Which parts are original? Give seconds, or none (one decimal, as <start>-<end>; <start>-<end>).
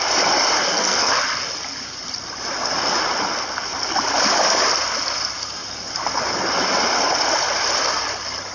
0.0-0.6; 1.2-8.5